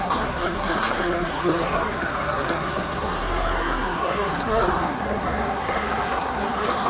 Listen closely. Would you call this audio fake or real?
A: fake